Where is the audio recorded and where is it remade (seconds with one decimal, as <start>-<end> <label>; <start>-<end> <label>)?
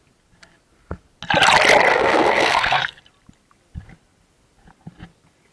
0.0-1.9 recorded; 1.9-3.0 remade; 3.0-5.5 recorded